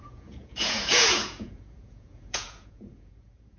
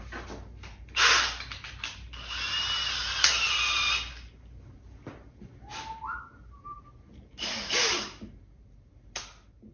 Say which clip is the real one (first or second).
second